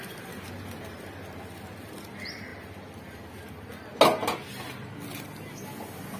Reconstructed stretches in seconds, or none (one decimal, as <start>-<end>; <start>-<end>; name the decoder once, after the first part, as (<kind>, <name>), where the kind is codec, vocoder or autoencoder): none